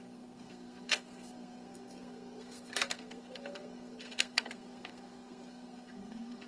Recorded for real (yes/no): no